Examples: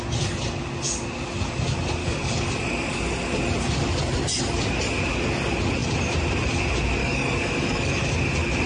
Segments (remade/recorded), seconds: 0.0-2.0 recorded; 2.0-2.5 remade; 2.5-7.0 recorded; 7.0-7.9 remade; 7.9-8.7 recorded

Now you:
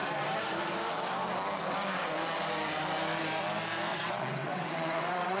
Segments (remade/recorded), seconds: 0.0-3.9 recorded; 3.9-5.4 remade